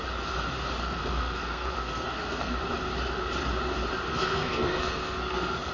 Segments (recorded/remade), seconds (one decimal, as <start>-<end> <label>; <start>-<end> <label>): 0.0-0.8 recorded; 0.8-2.6 remade; 2.6-4.1 recorded; 4.1-5.7 remade

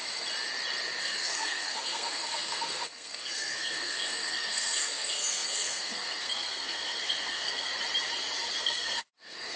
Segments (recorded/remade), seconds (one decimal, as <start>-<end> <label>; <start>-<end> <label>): 0.0-1.0 recorded; 1.0-7.7 remade; 7.7-8.6 recorded; 8.6-9.6 remade

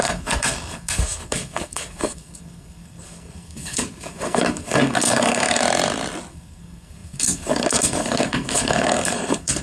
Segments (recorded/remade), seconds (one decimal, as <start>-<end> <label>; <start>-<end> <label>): 0.0-5.6 remade; 5.6-6.3 recorded; 6.3-9.6 remade

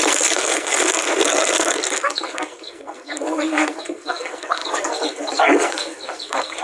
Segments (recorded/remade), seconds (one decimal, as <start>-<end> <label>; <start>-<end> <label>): 0.0-6.6 remade

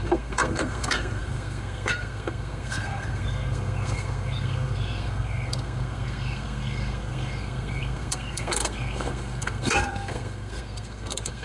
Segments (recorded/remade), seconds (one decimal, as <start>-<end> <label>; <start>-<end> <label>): 0.0-11.4 remade

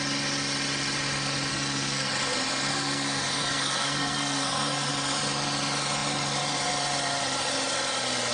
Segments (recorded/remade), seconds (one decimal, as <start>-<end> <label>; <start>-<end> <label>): 0.0-1.5 recorded; 1.5-2.1 remade; 2.1-2.7 recorded; 2.7-4.9 remade; 4.9-8.3 recorded